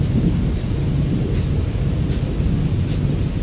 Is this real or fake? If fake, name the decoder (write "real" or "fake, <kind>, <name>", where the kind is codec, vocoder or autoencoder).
real